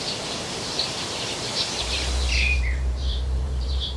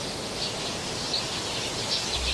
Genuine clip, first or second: second